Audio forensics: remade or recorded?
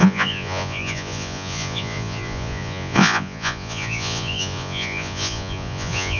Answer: remade